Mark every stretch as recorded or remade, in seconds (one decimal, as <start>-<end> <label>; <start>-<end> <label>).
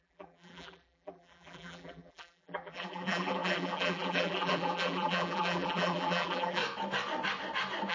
0.0-6.6 remade; 6.6-7.9 recorded